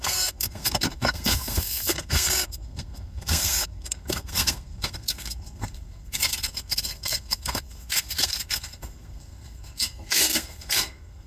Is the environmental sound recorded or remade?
remade